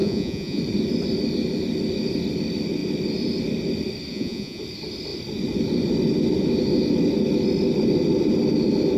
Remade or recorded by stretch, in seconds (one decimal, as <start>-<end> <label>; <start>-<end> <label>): 0.0-0.6 remade; 0.6-4.1 recorded; 4.1-4.6 remade; 4.6-9.0 recorded